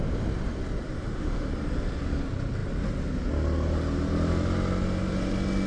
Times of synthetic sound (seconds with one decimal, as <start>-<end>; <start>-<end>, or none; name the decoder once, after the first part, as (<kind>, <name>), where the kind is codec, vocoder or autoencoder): 1.0-1.5 (autoencoder, DAC-VAE)